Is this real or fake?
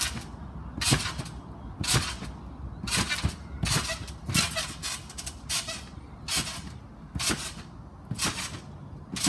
real